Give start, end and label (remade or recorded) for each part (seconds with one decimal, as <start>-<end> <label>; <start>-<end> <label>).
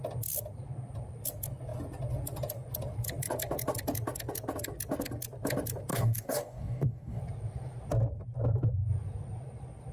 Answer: 0.0-5.9 recorded; 5.9-7.2 remade; 7.2-9.9 recorded